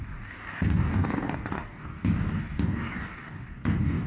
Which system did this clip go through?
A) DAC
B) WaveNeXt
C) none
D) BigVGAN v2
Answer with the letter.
A